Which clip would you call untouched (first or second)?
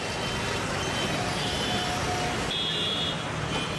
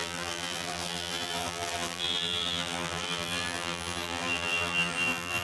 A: first